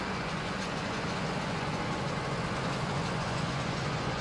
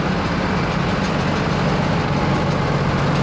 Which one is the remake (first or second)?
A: first